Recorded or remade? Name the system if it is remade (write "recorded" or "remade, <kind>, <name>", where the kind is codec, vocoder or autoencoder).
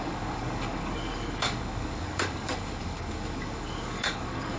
remade, codec, DAC